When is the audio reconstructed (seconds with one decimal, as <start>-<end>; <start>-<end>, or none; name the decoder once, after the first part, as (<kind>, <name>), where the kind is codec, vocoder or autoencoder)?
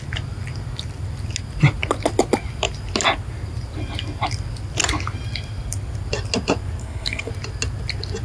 6.8-7.3 (codec, SNAC)